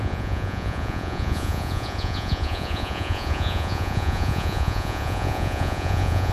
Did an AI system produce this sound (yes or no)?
yes